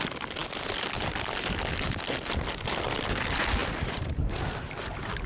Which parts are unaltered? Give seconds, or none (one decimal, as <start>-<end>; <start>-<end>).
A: 0.0-3.6; 4.3-5.3